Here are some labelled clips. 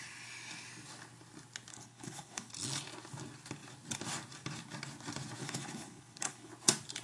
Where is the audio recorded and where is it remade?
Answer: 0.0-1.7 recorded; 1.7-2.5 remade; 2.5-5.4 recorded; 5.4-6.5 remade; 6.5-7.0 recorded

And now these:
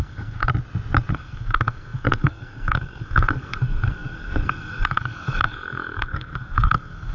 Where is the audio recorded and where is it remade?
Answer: 0.0-0.5 remade; 0.5-1.1 recorded; 1.1-7.1 remade

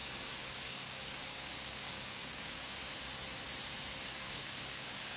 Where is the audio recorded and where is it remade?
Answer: 0.0-2.8 remade; 2.8-4.1 recorded; 4.1-5.2 remade

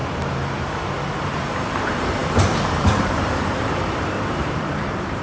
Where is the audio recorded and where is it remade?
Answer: 0.0-1.5 recorded; 1.5-5.2 remade

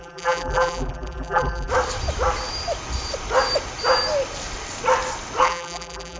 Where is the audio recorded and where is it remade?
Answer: 0.0-1.7 remade; 1.7-5.4 recorded; 5.4-6.2 remade